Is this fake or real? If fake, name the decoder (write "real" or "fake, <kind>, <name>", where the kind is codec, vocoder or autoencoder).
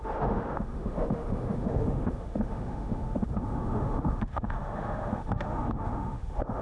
fake, autoencoder, DAC-VAE